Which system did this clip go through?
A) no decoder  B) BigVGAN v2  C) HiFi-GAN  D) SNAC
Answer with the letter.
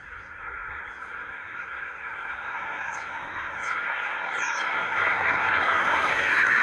D